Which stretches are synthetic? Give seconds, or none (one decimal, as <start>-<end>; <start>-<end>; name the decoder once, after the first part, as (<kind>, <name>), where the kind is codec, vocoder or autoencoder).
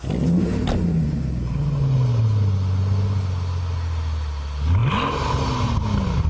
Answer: none